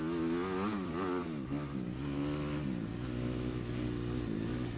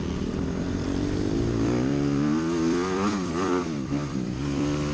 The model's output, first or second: second